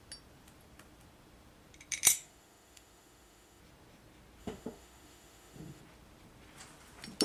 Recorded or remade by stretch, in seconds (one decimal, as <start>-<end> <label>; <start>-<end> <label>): 0.0-2.1 recorded; 2.1-3.6 remade; 3.6-4.4 recorded; 4.4-5.8 remade; 5.8-7.2 recorded